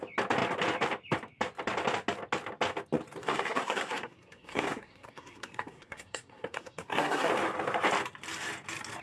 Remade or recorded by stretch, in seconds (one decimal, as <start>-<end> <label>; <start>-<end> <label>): 0.0-3.2 recorded; 3.2-7.3 remade; 7.3-9.0 recorded